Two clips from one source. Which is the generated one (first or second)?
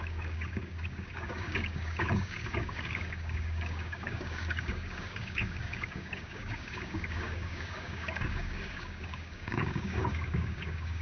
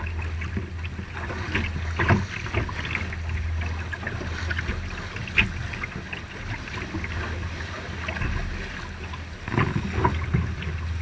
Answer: first